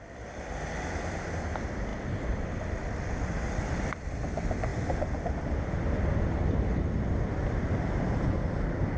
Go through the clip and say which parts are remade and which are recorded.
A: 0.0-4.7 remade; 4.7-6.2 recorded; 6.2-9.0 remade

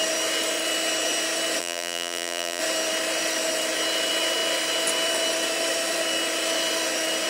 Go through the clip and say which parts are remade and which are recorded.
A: 0.0-1.6 recorded; 1.6-2.6 remade; 2.6-7.3 recorded